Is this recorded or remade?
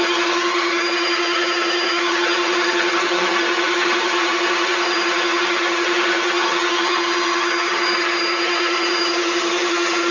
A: remade